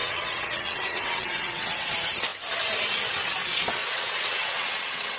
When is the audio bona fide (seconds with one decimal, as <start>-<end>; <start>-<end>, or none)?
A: 1.9-3.8